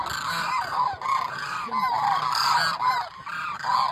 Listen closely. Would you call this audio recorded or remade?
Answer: recorded